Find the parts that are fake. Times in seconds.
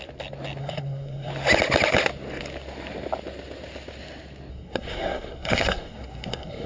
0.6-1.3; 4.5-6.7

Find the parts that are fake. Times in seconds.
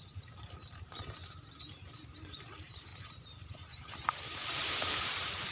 0.0-5.5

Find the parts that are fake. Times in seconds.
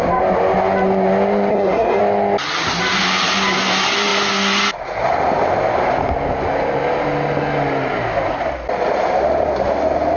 1.5-2.0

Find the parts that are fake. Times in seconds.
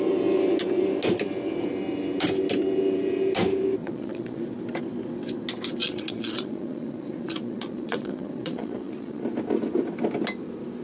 3.8-4.4; 5.8-9.2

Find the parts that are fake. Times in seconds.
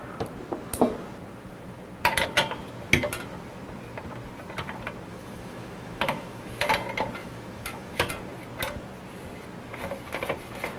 5.1-6.7; 7.2-8.1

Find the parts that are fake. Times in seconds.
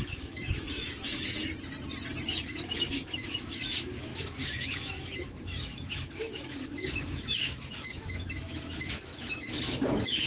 0.0-1.5; 2.3-10.3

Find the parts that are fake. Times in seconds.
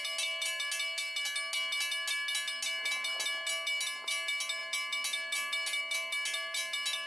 none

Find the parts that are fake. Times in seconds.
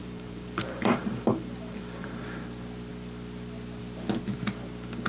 0.0-2.2